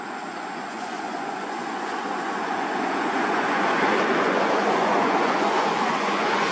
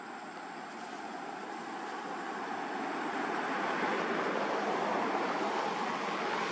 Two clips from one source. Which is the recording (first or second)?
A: second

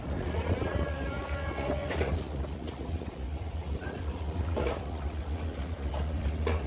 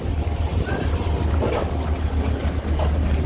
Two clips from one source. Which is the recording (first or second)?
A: second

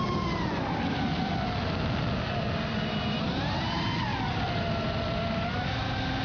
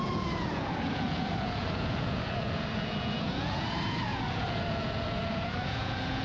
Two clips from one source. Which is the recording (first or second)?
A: first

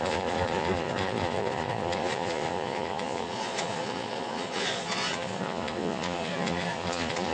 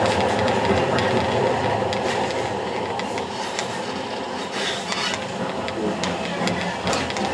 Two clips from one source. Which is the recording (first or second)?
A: second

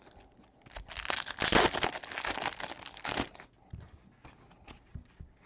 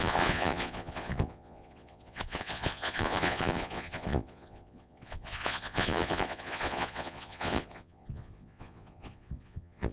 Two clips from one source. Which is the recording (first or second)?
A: first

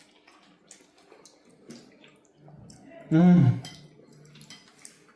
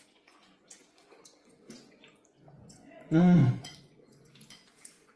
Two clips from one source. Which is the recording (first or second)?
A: first